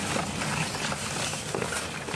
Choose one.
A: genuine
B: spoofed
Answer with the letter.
A